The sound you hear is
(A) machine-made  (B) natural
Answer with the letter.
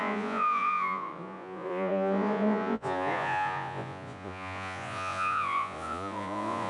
A